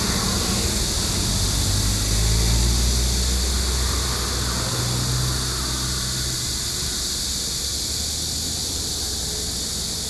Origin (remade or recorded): recorded